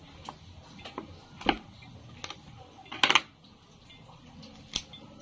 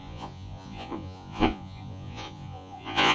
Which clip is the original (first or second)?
first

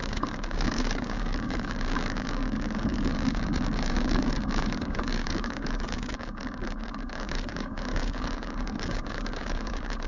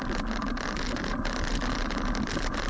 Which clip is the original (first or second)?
second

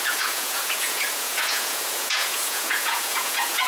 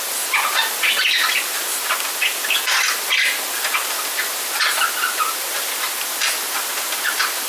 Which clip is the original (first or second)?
second